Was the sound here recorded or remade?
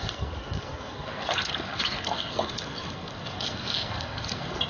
remade